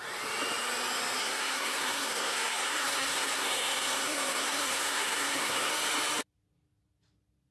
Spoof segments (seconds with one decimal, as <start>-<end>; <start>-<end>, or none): 1.2-5.7